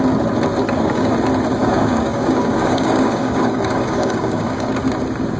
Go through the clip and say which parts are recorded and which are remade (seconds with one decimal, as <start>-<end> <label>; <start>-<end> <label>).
0.0-0.6 recorded; 0.6-1.1 remade; 1.1-1.6 recorded; 1.6-4.8 remade; 4.8-5.4 recorded